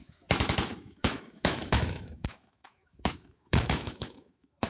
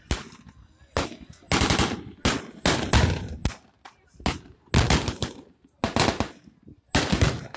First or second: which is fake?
first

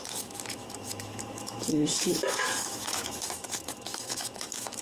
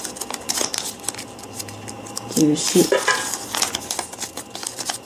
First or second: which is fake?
first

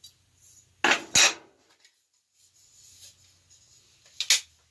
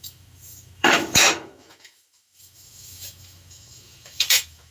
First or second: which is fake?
second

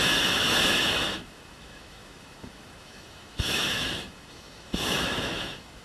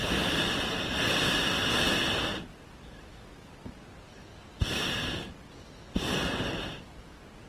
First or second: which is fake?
first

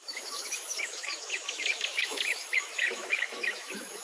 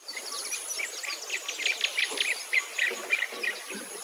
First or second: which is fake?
first